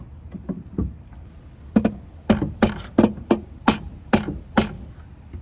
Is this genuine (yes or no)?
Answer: yes